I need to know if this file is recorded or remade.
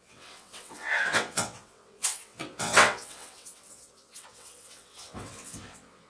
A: remade